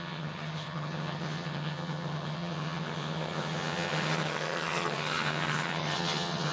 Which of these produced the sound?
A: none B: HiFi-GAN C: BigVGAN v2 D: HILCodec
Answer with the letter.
B